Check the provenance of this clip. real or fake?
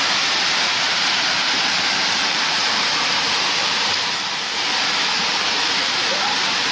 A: fake